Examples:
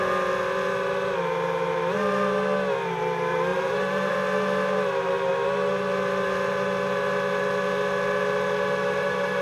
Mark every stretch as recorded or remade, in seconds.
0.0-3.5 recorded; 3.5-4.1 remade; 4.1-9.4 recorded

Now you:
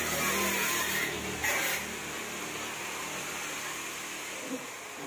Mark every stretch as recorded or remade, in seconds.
0.0-5.1 recorded